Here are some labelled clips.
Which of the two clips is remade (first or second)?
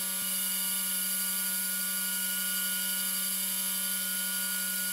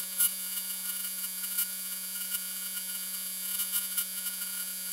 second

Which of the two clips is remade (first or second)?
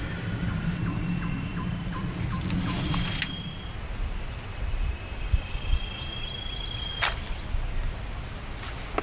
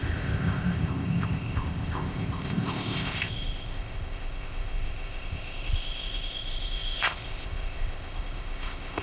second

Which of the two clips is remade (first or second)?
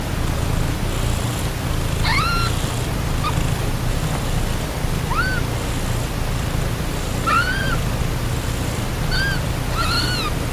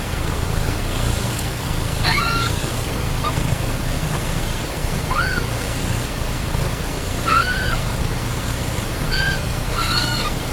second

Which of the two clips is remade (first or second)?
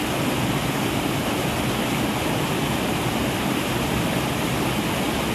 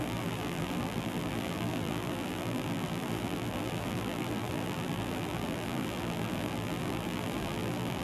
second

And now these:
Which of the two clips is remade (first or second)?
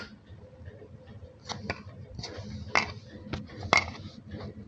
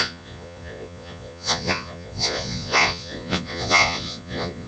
second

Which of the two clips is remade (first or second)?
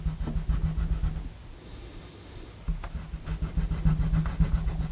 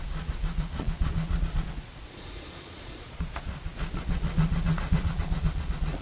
second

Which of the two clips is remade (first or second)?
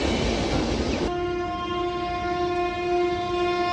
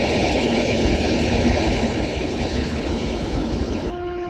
second